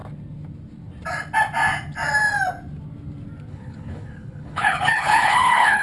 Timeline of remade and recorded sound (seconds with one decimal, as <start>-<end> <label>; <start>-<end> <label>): 0.0-3.5 recorded; 3.5-5.8 remade